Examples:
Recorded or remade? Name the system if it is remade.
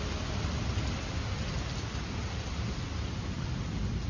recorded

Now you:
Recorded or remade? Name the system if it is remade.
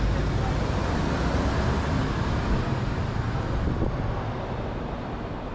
recorded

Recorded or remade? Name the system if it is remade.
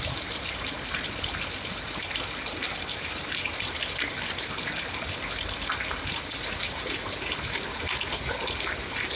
recorded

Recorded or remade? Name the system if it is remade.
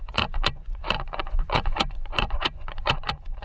remade, vocoder, Vocos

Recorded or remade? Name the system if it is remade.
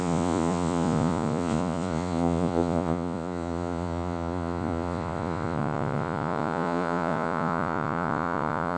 remade, vocoder, Vocos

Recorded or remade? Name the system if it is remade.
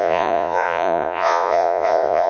remade, vocoder, Vocos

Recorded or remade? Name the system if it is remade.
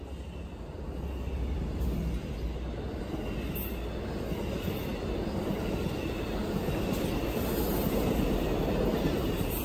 recorded